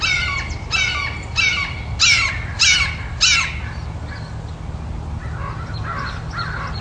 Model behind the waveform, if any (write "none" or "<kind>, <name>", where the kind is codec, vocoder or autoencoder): none